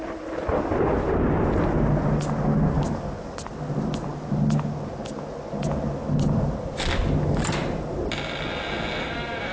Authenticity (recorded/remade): recorded